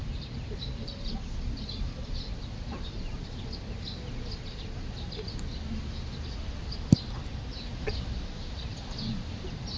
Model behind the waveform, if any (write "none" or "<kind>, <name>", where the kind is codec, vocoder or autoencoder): none